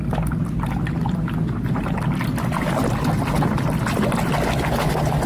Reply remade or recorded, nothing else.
recorded